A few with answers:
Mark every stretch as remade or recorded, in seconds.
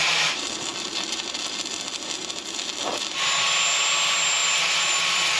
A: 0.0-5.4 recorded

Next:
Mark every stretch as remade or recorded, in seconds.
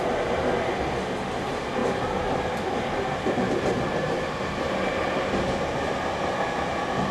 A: 0.0-7.1 recorded